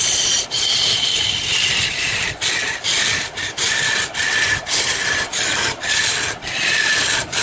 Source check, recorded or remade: recorded